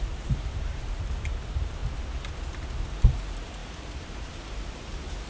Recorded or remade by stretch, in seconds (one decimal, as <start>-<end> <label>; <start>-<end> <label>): 0.0-1.8 remade; 1.8-2.8 recorded; 2.8-5.3 remade